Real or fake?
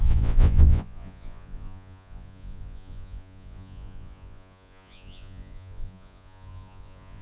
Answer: fake